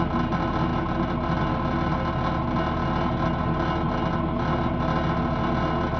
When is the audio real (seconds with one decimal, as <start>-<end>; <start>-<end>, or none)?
0.0-6.0